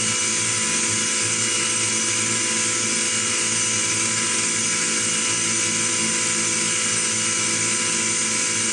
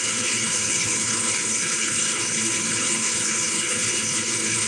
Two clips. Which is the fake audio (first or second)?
second